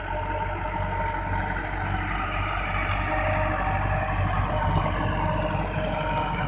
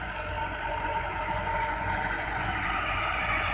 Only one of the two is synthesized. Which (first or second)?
second